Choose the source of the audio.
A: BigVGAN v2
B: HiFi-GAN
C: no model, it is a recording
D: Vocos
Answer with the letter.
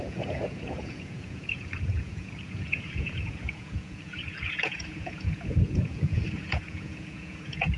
D